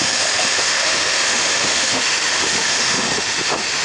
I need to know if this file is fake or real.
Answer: fake